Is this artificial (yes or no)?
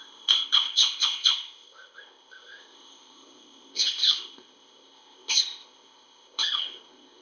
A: yes